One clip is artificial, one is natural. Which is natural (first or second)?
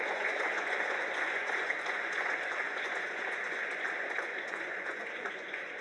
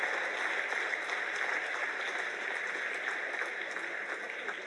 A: second